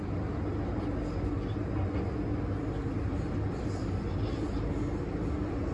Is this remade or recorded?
recorded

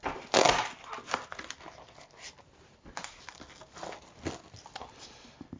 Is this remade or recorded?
recorded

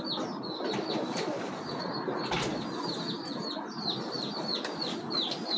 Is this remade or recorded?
recorded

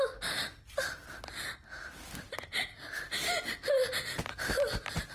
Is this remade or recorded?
recorded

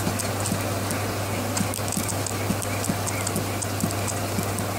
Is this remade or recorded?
recorded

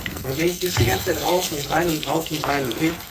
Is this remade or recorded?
remade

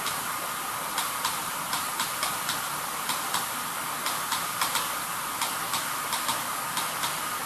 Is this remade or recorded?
recorded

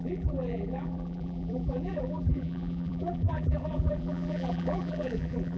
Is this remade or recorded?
remade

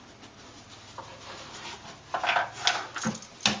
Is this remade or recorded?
recorded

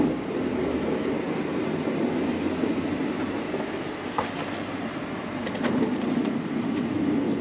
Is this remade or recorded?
recorded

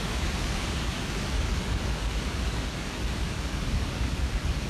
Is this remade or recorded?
remade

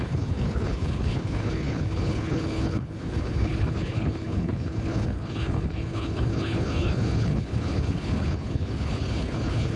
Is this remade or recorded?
remade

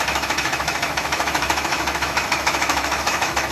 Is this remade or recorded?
remade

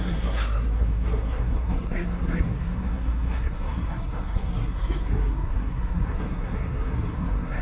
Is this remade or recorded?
remade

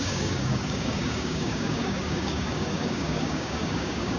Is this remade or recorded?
remade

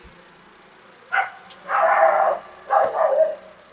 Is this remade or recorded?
recorded